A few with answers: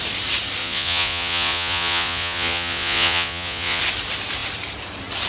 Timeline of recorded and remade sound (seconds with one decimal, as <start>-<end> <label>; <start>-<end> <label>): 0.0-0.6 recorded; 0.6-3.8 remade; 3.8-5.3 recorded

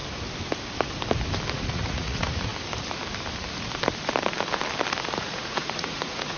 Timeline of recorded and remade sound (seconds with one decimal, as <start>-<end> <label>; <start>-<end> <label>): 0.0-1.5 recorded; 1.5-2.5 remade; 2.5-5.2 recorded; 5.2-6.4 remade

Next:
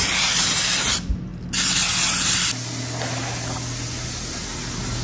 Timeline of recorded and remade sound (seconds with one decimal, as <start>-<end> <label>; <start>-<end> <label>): 0.0-5.0 recorded

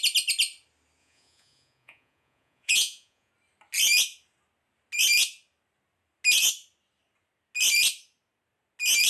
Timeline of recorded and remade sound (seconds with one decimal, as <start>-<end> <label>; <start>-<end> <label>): 0.0-1.0 recorded; 1.0-3.3 remade; 3.3-9.1 recorded

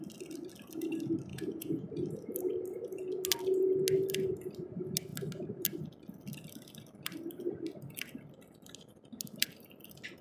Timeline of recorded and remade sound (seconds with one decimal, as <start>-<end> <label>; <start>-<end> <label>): 0.0-1.3 recorded; 1.3-1.8 remade; 1.8-10.2 recorded

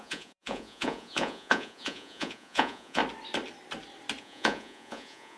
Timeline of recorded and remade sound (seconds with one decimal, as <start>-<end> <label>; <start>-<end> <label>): 0.0-3.0 remade; 3.0-4.2 recorded; 4.2-5.4 remade